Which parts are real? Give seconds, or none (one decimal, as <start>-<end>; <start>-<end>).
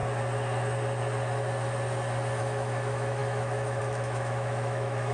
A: 0.0-2.4